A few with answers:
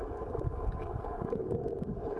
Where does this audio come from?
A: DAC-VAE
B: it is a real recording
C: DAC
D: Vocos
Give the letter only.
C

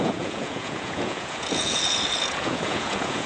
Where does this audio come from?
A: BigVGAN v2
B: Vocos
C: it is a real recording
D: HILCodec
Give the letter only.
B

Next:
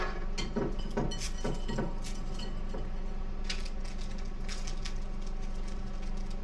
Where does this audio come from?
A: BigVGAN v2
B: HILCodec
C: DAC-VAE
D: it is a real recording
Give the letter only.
D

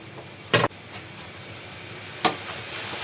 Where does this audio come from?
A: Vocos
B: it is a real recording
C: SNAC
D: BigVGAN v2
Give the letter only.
D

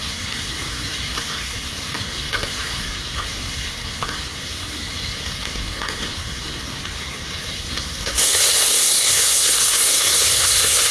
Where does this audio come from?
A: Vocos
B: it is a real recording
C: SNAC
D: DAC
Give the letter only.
C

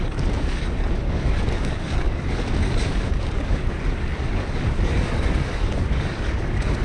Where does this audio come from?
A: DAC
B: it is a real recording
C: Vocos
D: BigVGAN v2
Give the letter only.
A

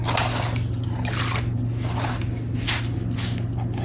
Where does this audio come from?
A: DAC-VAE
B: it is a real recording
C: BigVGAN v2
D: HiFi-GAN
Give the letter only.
B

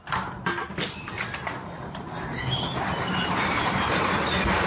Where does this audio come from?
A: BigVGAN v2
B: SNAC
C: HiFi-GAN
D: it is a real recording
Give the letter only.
D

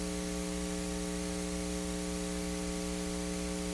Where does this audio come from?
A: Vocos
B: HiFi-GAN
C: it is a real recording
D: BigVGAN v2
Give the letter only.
C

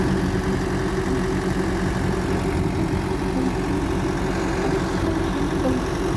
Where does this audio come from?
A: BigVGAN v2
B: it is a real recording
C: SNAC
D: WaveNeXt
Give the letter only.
B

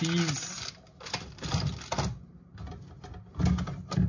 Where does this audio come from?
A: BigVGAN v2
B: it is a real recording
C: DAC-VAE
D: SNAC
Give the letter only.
B